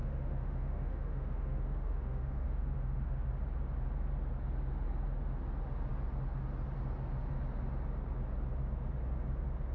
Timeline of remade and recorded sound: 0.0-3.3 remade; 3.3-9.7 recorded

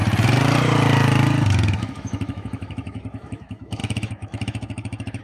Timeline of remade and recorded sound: 0.0-1.8 recorded; 1.8-5.2 remade

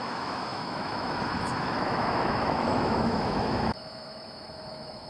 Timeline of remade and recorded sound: 0.0-5.1 remade